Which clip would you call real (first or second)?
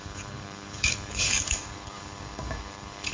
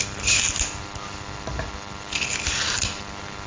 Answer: second